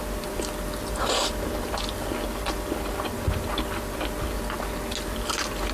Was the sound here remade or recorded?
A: recorded